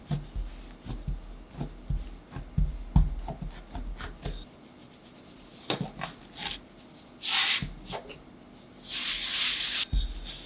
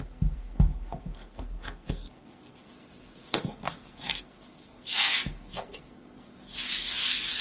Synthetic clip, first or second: second